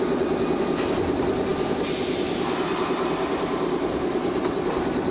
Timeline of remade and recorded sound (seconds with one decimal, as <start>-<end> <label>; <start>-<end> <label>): 0.0-5.1 recorded